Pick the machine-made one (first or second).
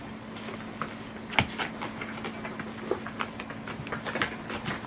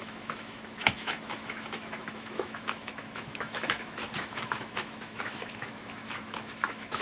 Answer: second